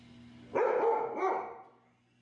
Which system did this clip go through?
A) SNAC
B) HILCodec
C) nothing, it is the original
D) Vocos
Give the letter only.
C